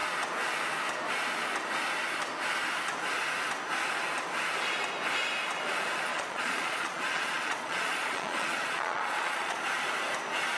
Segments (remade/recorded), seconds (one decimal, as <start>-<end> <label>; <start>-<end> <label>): 0.0-6.1 recorded; 6.1-9.6 remade; 9.6-10.6 recorded